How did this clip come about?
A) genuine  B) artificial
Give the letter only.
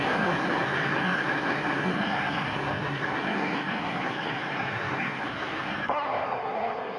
B